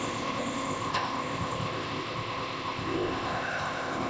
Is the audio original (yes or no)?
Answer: no